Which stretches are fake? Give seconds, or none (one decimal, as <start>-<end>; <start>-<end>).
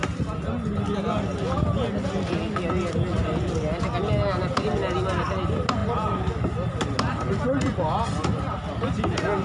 none